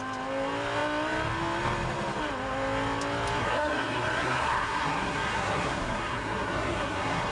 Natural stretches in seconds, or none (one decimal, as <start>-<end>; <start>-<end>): 0.0-3.4